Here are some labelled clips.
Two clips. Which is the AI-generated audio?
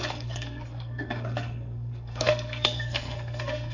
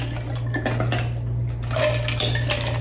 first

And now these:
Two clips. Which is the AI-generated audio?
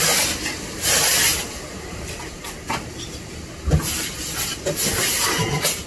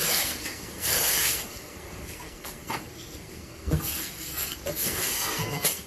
second